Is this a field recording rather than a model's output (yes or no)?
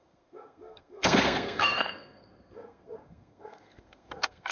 no